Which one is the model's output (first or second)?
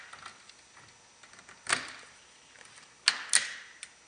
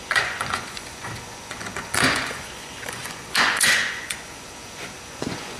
second